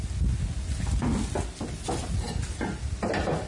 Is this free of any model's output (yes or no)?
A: yes